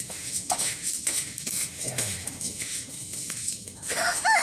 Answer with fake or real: fake